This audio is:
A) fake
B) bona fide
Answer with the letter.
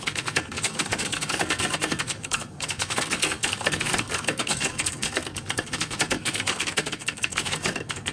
A